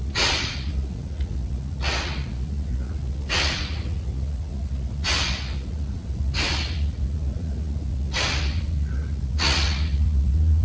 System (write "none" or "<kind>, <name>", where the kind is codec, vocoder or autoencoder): vocoder, Vocos